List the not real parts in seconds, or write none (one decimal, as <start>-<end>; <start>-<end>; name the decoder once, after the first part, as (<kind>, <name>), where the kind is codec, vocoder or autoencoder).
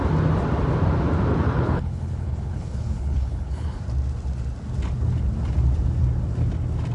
1.3-3.8 (codec, HILCodec)